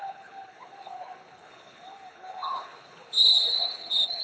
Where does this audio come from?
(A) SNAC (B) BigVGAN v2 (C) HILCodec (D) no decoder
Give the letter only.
C